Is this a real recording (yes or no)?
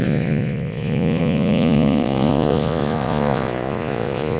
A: no